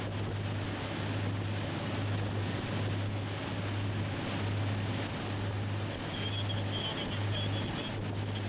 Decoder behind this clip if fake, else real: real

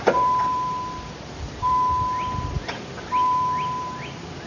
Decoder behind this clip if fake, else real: fake, vocoder, BigVGAN v2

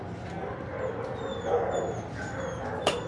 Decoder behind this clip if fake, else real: real